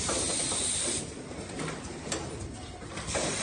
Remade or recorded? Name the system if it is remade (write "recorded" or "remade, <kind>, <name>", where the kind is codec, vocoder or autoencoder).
remade, vocoder, BigVGAN v2